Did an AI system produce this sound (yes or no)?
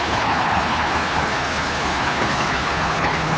yes